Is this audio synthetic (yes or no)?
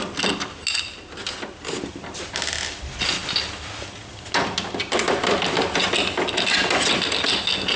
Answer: no